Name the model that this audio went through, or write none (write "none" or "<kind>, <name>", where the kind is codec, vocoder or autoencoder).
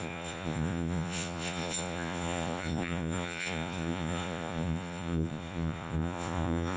vocoder, Vocos